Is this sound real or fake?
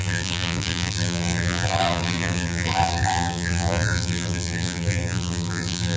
fake